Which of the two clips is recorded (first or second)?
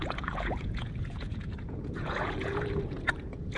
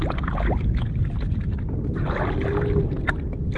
second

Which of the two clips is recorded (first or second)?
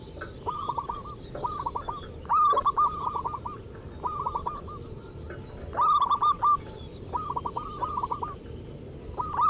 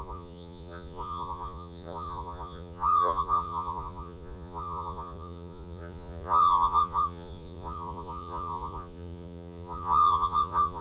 first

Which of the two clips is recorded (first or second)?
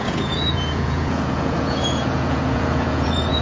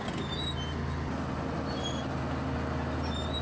second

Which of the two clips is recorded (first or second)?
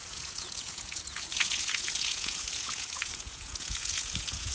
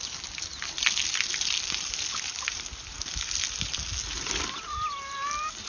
second